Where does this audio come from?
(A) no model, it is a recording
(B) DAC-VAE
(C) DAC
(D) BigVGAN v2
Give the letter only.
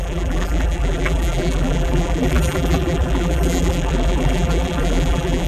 D